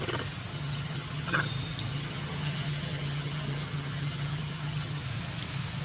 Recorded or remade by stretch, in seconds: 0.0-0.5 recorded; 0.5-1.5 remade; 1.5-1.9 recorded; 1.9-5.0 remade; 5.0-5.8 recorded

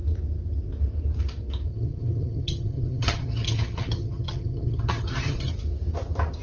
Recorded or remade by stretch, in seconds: 0.0-1.7 recorded; 1.7-5.5 remade; 5.5-6.4 recorded

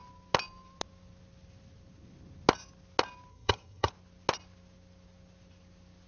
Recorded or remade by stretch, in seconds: 0.0-3.3 recorded; 3.3-3.9 remade; 3.9-6.1 recorded

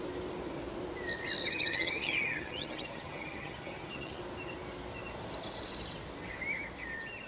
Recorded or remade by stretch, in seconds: 0.0-1.4 recorded; 1.4-4.2 remade; 4.2-7.3 recorded

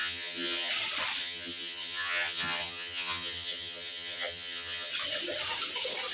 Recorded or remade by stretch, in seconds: 0.0-0.7 remade; 0.7-1.2 recorded; 1.2-4.9 remade; 4.9-6.1 recorded

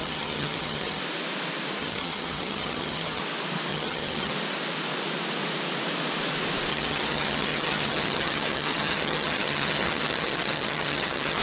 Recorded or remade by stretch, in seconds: 0.0-1.0 remade; 1.0-1.8 recorded; 1.8-3.2 remade; 3.2-3.7 recorded; 3.7-4.3 remade; 4.3-6.7 recorded; 6.7-11.4 remade